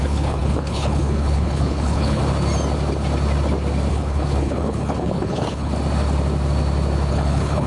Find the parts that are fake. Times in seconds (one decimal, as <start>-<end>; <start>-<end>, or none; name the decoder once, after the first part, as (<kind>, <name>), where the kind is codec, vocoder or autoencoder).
0.0-2.2 (codec, HILCodec); 3.9-5.7; 7.1-7.7